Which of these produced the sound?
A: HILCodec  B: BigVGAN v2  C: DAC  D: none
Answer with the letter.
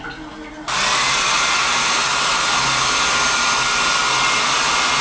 D